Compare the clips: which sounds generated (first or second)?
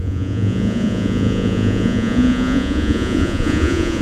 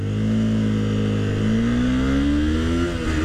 first